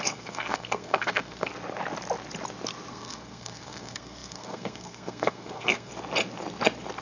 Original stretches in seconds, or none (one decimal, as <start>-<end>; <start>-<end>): 1.5-2.9; 5.9-7.0